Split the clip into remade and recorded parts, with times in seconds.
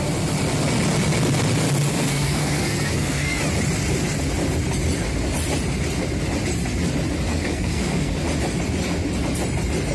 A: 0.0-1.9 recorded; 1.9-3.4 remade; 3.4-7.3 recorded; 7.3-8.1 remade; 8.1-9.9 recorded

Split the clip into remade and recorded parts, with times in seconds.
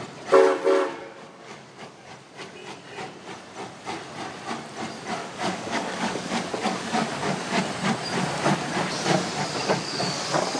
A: 0.0-1.0 recorded; 1.0-2.1 remade; 2.1-5.2 recorded; 5.2-7.6 remade; 7.6-9.6 recorded; 9.6-10.6 remade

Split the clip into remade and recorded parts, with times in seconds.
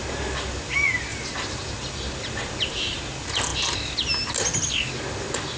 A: 0.0-5.6 recorded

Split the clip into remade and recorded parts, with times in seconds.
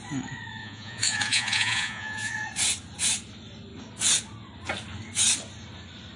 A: 0.0-0.6 recorded; 0.6-2.3 remade; 2.3-6.2 recorded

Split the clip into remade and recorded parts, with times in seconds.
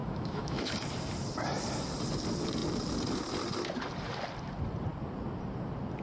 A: 0.0-0.7 remade; 0.7-6.0 recorded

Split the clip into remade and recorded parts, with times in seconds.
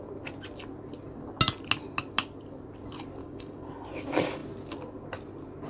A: 0.0-3.2 recorded; 3.2-3.7 remade; 3.7-5.7 recorded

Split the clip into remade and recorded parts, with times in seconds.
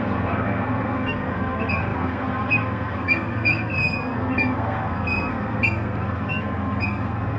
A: 0.0-7.4 remade